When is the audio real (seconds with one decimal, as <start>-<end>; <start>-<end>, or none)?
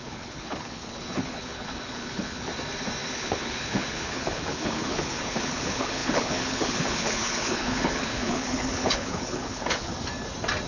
2.5-3.1; 9.9-10.7